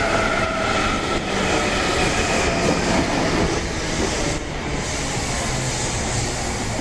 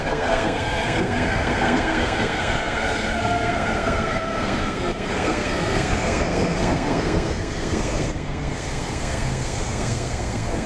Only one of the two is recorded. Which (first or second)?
first